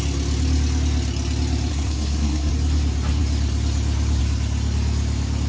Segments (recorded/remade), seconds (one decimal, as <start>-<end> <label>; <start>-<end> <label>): 0.0-1.7 recorded; 1.7-2.5 remade; 2.5-5.5 recorded